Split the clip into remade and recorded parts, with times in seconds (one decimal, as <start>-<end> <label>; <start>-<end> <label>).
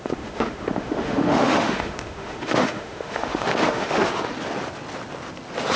0.0-4.3 remade; 4.3-5.8 recorded